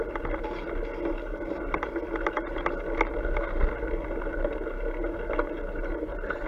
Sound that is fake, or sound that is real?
real